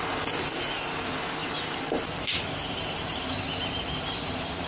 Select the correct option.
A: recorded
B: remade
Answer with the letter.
A